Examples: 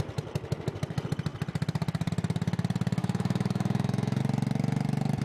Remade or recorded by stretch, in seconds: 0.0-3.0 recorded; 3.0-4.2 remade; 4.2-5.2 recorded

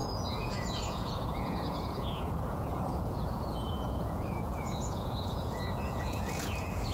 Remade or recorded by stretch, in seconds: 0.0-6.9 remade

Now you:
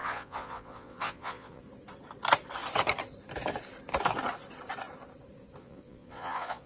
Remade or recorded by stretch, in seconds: 0.0-1.6 remade; 1.6-5.6 recorded; 5.6-6.7 remade

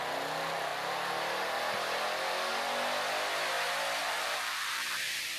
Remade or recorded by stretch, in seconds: 0.0-4.0 recorded; 4.0-5.4 remade

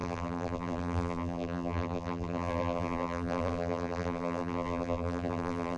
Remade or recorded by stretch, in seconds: 0.0-5.8 remade

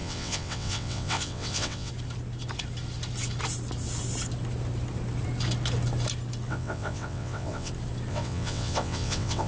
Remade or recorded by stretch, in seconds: 0.0-1.9 remade; 1.9-6.5 recorded; 6.5-7.7 remade; 7.7-8.1 recorded; 8.1-9.5 remade